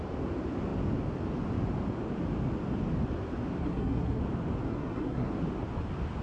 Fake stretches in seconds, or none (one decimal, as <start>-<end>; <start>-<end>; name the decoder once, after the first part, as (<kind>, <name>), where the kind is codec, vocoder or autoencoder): 3.6-4.2 (codec, SNAC); 4.7-5.3